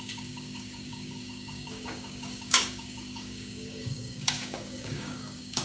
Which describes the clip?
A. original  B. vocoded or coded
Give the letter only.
B